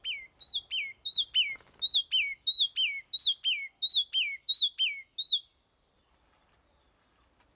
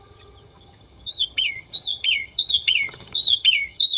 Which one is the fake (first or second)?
second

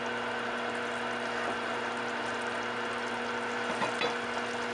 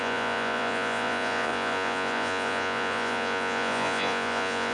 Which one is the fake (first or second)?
second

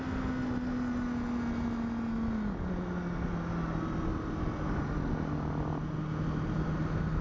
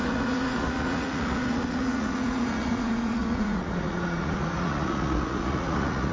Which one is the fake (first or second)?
second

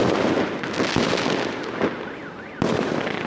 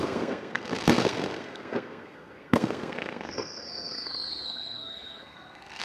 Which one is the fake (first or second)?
second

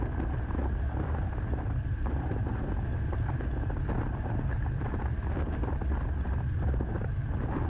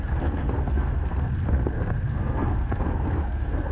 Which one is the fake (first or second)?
second